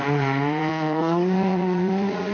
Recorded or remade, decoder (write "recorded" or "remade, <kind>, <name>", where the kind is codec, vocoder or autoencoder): remade, vocoder, Vocos